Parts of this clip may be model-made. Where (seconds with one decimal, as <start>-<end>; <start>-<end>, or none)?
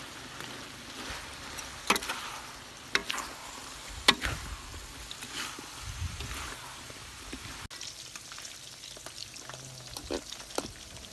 none